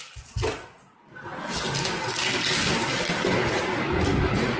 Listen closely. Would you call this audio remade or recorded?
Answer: recorded